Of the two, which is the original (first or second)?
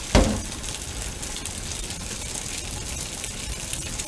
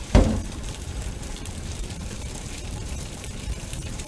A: first